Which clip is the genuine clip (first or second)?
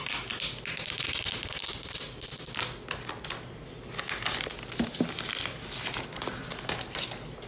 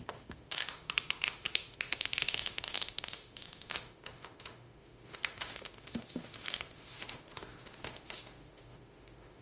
first